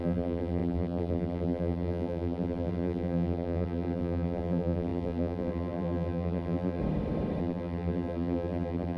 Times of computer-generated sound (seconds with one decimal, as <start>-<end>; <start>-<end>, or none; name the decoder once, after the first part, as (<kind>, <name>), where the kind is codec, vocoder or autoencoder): 0.0-6.8 (vocoder, BigVGAN v2); 7.4-9.0